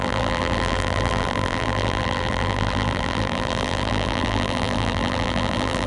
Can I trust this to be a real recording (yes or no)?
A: no